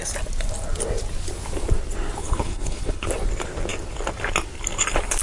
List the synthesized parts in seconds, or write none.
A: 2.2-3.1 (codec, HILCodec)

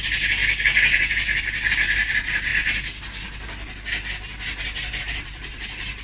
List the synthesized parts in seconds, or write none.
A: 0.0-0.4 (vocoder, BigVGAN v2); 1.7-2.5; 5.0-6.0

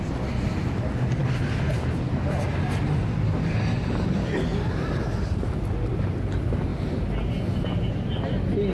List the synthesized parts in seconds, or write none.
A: none